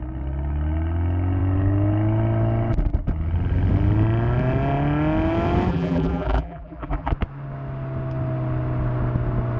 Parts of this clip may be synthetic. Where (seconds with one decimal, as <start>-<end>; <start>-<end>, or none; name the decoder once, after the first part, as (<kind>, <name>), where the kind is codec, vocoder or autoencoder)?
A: 5.7-7.1 (vocoder, BigVGAN v2)